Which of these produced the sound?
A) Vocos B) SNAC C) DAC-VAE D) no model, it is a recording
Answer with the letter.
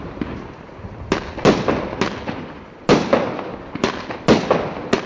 D